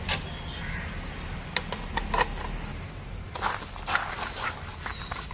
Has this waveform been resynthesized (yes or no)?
no